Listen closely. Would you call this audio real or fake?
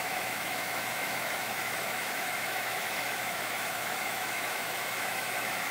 fake